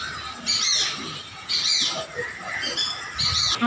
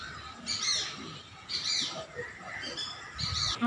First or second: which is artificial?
second